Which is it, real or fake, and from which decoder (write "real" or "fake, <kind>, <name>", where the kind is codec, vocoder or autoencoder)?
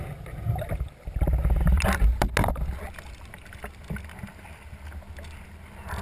real